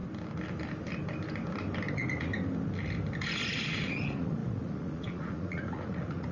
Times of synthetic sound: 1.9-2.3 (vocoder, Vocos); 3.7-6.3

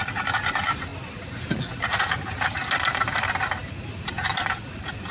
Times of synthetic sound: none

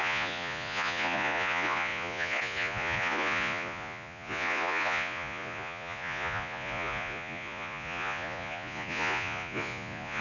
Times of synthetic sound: 0.0-10.2 (vocoder, Vocos)

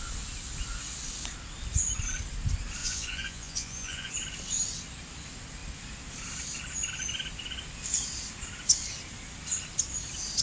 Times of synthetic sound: 2.8-4.1 (vocoder, Vocos)